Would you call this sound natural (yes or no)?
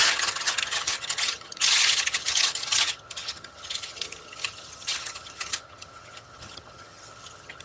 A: no